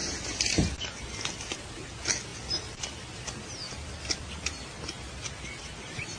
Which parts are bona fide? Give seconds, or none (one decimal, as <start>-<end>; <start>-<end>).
0.0-6.2